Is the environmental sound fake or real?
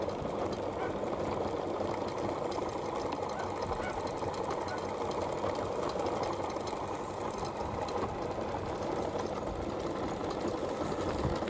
real